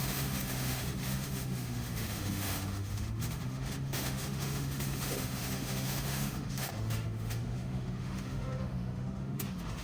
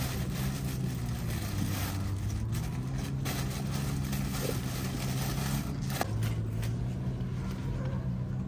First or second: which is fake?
first